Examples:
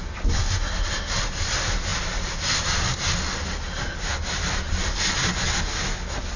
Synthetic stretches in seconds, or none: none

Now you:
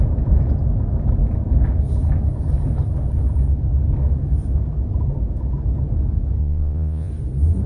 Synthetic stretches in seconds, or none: 6.4-7.1 (vocoder, Vocos)

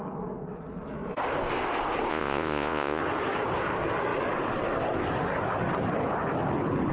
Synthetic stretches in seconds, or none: 2.1-3.0 (vocoder, Vocos)

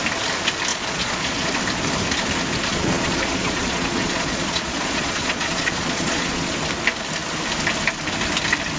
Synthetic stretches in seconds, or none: 0.7-1.6 (vocoder, Vocos); 2.7-6.6

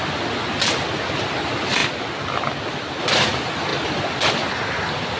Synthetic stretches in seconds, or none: none

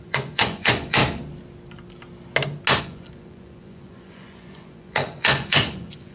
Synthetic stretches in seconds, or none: 0.0-1.0 (vocoder, Vocos); 2.8-6.1

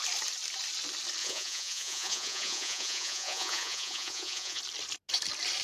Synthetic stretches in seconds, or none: 1.2-4.6 (vocoder, Vocos)

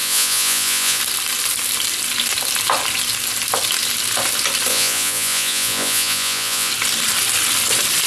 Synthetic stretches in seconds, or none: 0.0-1.0 (vocoder, Vocos); 4.7-6.7